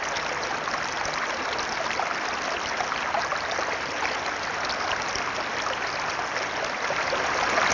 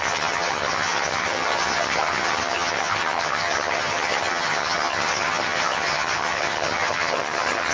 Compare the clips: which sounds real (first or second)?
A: first